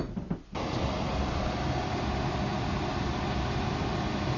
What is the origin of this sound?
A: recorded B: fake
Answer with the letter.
A